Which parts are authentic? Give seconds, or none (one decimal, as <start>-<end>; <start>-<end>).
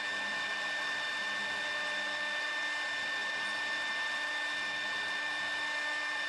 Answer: 0.0-6.3